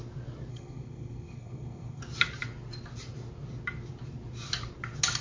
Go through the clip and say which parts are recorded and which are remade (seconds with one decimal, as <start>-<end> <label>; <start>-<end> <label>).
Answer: 0.0-0.5 recorded; 0.5-2.0 remade; 2.0-5.2 recorded

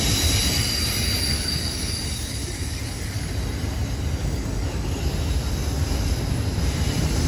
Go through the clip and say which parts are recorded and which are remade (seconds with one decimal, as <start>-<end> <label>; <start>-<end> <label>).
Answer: 0.0-1.3 recorded; 1.3-3.3 remade; 3.3-4.2 recorded; 4.2-5.0 remade; 5.0-7.3 recorded